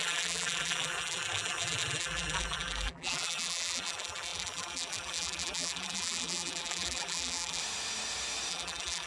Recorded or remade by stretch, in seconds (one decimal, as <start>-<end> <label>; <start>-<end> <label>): 0.0-7.6 remade; 7.6-8.5 recorded; 8.5-9.1 remade